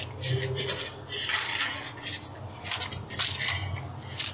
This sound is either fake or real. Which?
real